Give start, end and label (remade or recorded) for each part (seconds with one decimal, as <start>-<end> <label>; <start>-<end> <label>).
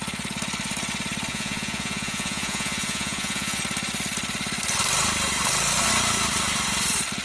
0.0-1.3 recorded; 1.3-3.6 remade; 3.6-7.2 recorded